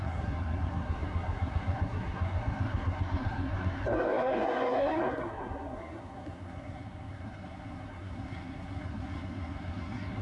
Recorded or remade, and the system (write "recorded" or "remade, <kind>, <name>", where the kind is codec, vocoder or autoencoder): remade, codec, SNAC